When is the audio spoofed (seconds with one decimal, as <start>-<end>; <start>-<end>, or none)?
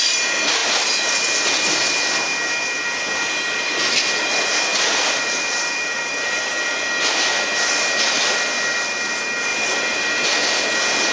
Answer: 4.7-6.5; 9.5-10.2